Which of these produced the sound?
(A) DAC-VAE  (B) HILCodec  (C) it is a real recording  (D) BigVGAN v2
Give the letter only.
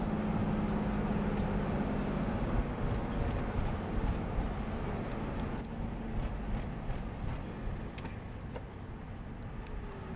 C